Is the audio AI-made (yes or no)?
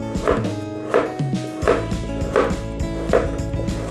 no